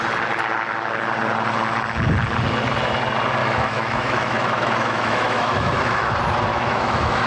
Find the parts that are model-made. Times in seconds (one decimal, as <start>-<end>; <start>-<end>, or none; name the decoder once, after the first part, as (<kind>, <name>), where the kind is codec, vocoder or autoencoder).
3.4-6.1 (autoencoder, DAC-VAE); 6.5-7.3